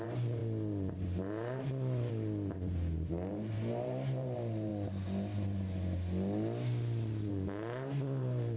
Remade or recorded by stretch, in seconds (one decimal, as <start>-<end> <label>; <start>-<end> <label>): 0.0-4.7 remade; 4.7-7.3 recorded; 7.3-8.6 remade